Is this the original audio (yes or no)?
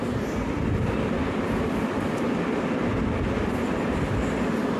yes